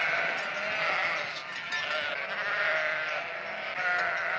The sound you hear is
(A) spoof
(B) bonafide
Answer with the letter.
B